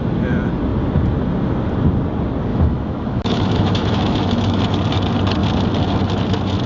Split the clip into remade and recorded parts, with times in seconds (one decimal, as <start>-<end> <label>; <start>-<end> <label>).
0.0-2.5 recorded; 2.5-4.6 remade; 4.6-6.7 recorded